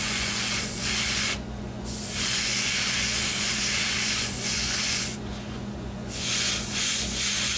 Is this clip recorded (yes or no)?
no